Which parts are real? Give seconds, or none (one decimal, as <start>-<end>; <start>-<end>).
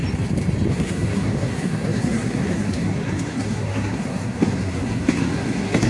0.0-0.7